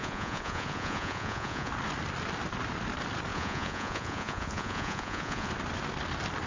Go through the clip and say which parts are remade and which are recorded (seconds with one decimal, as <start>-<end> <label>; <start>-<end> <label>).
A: 0.0-1.7 remade; 1.7-3.3 recorded; 3.3-5.5 remade; 5.5-6.5 recorded